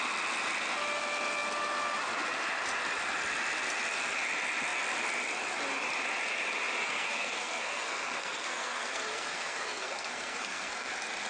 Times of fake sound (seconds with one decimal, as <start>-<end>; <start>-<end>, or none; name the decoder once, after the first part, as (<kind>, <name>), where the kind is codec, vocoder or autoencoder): 6.8-10.9 (codec, SNAC)